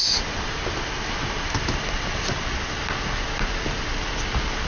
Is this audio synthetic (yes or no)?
no